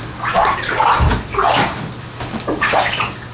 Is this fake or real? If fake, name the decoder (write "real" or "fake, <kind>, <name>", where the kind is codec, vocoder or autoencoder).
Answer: real